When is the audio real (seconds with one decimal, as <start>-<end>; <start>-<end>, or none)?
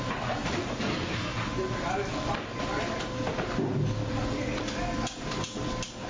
0.0-6.1